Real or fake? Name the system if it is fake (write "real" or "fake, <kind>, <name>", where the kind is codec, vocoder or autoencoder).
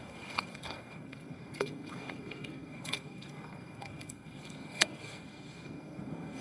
fake, codec, SNAC